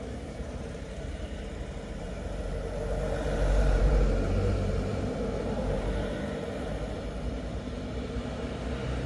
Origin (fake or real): fake